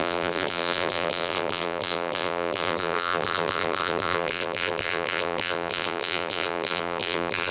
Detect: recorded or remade remade